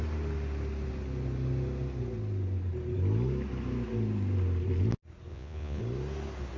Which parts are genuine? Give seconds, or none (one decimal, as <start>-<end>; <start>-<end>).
0.0-5.3; 5.8-6.6